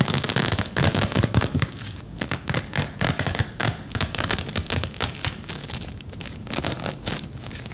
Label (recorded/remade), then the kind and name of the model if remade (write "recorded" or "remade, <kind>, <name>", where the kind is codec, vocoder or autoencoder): remade, codec, DAC